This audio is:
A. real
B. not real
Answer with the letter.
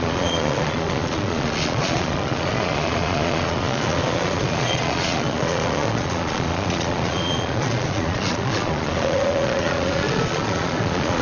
B